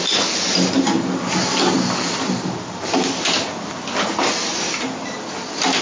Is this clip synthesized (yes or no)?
no